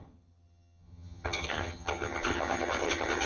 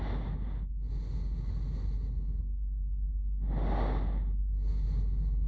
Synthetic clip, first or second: first